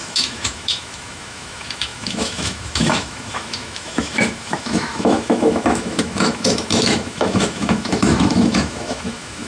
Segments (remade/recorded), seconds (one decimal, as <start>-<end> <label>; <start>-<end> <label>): 0.0-9.5 remade